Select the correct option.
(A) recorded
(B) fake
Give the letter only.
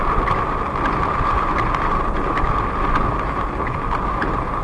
B